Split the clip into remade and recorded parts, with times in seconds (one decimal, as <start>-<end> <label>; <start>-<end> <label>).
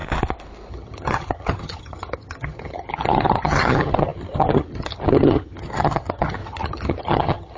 0.0-0.7 recorded; 0.7-7.6 remade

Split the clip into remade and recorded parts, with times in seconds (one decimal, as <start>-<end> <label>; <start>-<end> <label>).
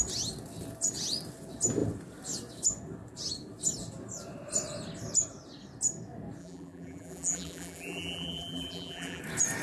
0.0-6.4 recorded; 6.4-9.2 remade; 9.2-9.6 recorded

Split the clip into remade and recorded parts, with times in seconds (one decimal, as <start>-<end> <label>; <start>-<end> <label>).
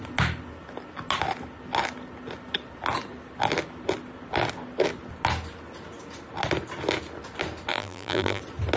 0.0-7.7 recorded; 7.7-8.4 remade; 8.4-8.8 recorded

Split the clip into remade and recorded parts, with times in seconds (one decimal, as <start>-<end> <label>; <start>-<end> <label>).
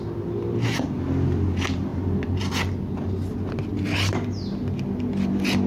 0.0-5.7 recorded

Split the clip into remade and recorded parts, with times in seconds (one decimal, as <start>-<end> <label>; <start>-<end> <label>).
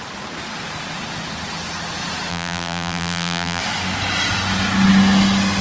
0.0-2.3 recorded; 2.3-3.6 remade; 3.6-5.6 recorded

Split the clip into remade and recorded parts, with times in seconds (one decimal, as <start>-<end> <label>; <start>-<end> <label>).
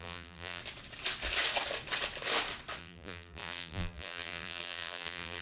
0.0-0.6 remade; 0.6-2.8 recorded; 2.8-5.4 remade